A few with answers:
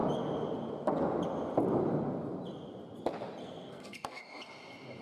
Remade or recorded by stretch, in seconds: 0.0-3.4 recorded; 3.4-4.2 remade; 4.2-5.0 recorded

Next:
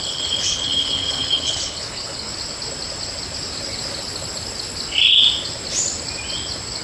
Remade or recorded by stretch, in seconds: 0.0-2.3 remade; 2.3-6.8 recorded

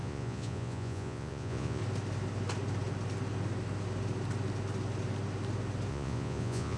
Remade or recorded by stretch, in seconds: 0.0-1.8 remade; 1.8-5.9 recorded; 5.9-6.8 remade

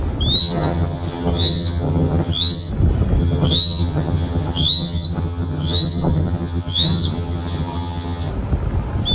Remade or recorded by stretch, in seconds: 0.0-0.4 recorded; 0.4-2.7 remade; 2.7-3.2 recorded; 3.2-8.3 remade; 8.3-9.1 recorded